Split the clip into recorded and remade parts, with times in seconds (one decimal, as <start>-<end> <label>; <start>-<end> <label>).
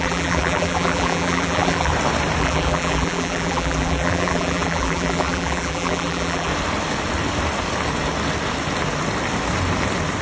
0.0-1.9 remade; 1.9-2.4 recorded; 2.4-6.5 remade; 6.5-10.2 recorded